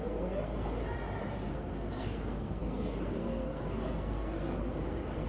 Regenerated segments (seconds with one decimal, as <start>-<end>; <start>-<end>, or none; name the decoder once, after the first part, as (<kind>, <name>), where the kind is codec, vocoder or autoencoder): 0.0-0.8 (codec, SNAC); 1.5-5.3